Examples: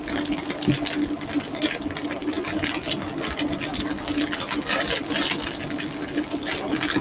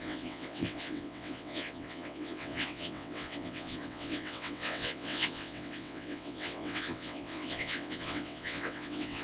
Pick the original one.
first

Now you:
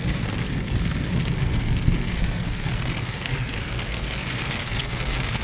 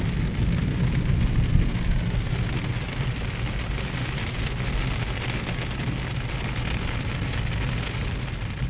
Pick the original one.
second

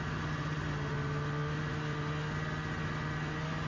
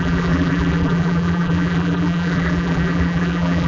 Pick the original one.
first